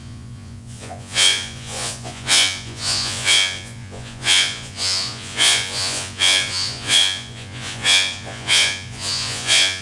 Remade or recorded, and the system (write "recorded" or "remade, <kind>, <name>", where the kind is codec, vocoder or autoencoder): remade, vocoder, Vocos